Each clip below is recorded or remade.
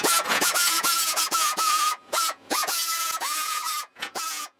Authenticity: remade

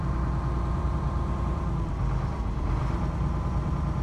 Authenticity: remade